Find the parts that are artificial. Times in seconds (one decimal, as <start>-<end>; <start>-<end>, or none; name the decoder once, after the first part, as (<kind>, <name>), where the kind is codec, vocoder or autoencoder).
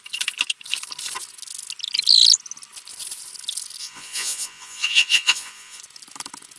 3.8-5.8 (vocoder, Vocos)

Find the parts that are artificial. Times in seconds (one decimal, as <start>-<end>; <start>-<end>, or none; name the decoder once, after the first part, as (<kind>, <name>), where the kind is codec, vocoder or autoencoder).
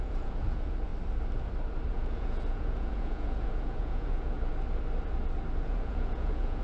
0.0-0.9 (vocoder, Vocos); 1.9-4.5; 5.6-6.6